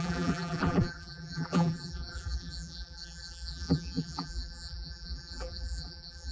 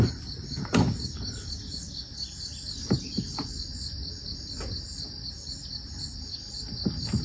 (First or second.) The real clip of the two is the second